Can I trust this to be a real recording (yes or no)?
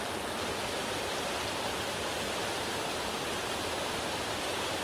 yes